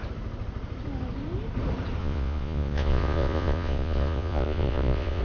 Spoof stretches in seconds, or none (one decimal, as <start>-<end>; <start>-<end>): 2.0-5.2